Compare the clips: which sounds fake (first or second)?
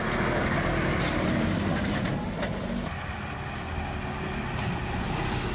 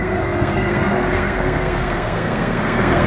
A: second